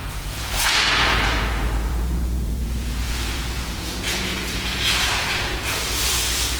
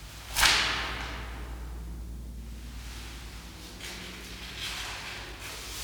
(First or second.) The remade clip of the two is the first